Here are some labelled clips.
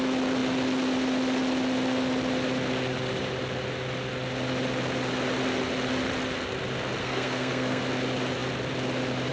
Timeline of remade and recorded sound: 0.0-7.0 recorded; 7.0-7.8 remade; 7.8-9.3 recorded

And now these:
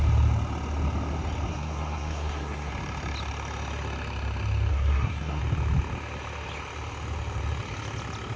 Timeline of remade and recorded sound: 0.0-1.5 recorded; 1.5-2.7 remade; 2.7-4.7 recorded; 4.7-5.4 remade; 5.4-8.4 recorded

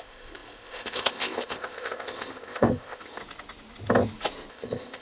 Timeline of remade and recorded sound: 0.0-3.2 remade; 3.2-4.5 recorded; 4.5-5.0 remade

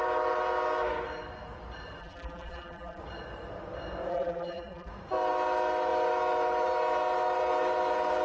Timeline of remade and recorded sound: 0.0-2.0 recorded; 2.0-3.0 remade; 3.0-4.1 recorded; 4.1-4.9 remade; 4.9-8.2 recorded

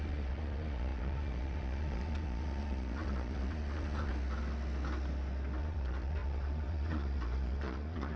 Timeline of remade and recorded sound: 0.0-4.1 remade; 4.1-5.6 recorded; 5.6-8.2 remade

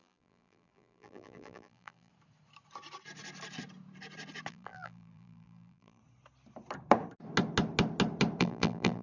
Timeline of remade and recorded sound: 0.0-2.1 remade; 2.1-4.5 recorded; 4.5-6.0 remade; 6.0-8.4 recorded; 8.4-9.0 remade

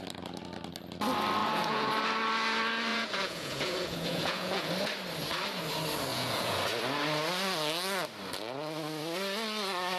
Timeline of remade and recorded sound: 0.0-1.4 recorded; 1.4-1.9 remade; 1.9-2.9 recorded; 2.9-4.7 remade; 4.7-6.1 recorded; 6.1-6.6 remade; 6.6-10.0 recorded